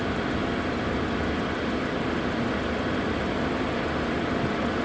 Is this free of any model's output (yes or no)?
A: yes